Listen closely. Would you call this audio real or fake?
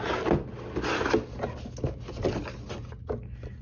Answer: real